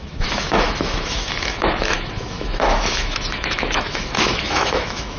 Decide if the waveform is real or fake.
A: fake